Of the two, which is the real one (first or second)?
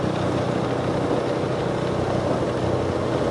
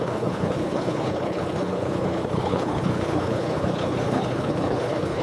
first